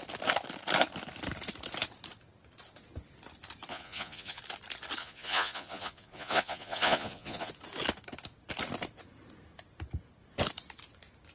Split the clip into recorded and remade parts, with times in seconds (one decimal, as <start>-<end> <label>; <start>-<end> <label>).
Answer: 0.0-3.7 recorded; 3.7-4.4 remade; 4.4-5.0 recorded; 5.0-7.5 remade; 7.5-11.3 recorded